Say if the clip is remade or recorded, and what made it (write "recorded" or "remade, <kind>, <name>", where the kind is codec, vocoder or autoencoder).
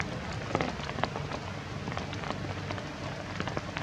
recorded